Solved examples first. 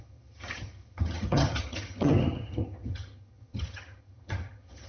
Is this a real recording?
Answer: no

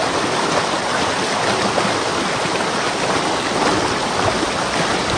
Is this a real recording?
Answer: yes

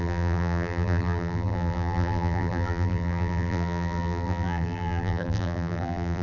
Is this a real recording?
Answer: no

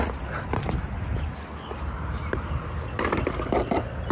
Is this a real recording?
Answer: yes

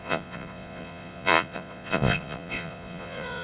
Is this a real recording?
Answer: no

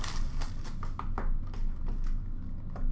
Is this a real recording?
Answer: yes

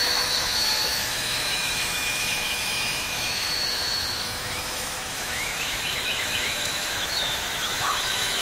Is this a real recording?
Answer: no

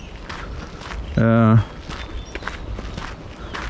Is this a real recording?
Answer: yes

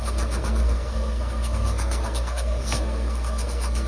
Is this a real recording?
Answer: no